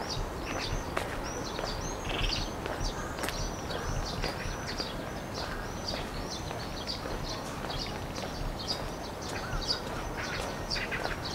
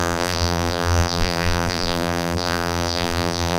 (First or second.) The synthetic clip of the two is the second